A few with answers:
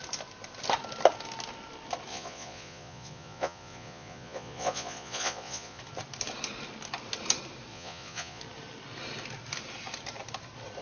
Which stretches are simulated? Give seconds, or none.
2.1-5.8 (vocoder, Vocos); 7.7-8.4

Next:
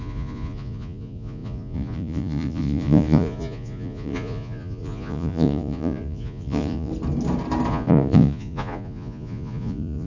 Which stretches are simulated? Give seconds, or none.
0.0-6.9 (vocoder, Vocos); 7.7-10.1